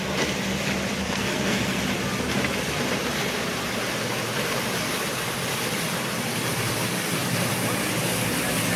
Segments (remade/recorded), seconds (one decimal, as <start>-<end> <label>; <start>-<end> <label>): 0.0-1.0 recorded; 1.0-1.8 remade; 1.8-8.8 recorded